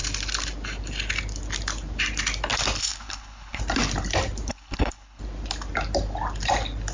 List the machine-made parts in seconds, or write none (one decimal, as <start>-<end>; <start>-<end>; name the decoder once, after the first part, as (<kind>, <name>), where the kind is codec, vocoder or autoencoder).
2.8-3.6 (codec, HILCodec); 4.5-5.2